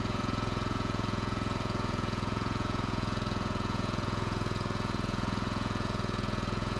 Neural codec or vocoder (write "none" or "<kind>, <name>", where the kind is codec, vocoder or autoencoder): vocoder, Vocos